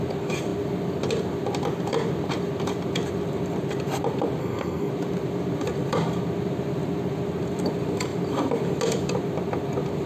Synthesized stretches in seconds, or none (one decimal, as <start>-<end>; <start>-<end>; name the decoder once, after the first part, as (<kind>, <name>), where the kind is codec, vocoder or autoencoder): 4.4-4.9 (codec, SNAC)